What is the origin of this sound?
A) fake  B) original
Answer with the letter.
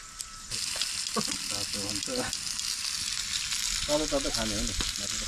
B